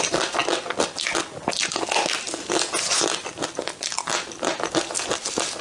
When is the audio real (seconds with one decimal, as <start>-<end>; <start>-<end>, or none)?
0.0-5.6